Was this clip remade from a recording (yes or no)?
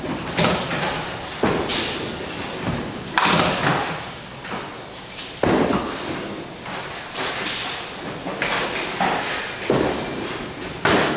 no